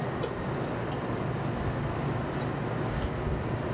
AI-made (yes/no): no